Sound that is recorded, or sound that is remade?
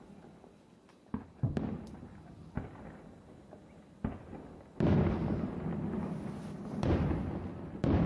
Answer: recorded